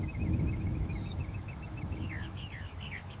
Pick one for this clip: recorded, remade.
remade